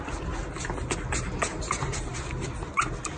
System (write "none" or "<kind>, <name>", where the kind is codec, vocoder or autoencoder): none